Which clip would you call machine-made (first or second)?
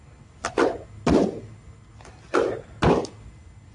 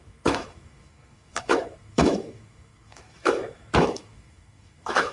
second